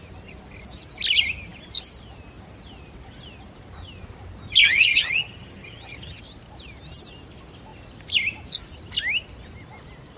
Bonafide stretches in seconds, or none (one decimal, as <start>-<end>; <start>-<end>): 0.0-4.6; 6.2-10.2

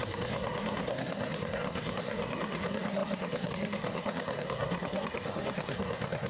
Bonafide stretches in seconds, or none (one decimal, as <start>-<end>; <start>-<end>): none

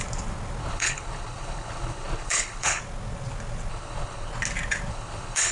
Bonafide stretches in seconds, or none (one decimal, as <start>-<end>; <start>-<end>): 0.0-0.6; 2.8-3.7; 4.3-4.9

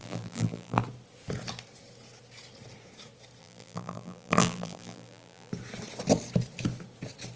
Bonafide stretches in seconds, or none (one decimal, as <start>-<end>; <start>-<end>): 0.8-3.4; 5.5-7.4

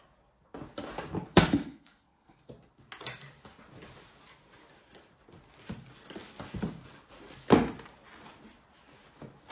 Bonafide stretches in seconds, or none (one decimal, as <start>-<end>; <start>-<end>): 0.0-1.3; 2.5-9.5

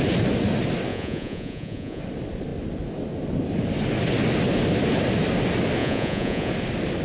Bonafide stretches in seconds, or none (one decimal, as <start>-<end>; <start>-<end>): 0.0-0.9; 2.0-5.8; 6.5-7.0

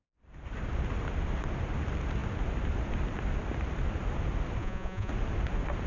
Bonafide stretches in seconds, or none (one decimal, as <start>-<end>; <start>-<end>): 0.0-4.6; 5.1-5.9

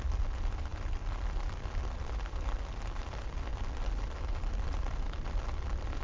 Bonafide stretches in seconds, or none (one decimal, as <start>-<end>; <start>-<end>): 0.0-6.0